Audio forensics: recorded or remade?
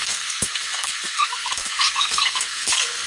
remade